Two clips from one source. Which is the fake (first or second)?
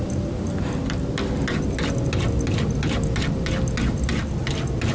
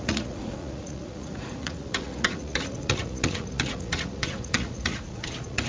second